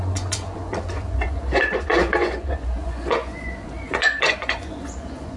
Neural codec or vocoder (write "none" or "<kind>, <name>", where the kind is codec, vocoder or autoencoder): vocoder, Vocos